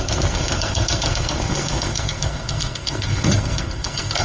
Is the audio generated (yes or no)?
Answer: yes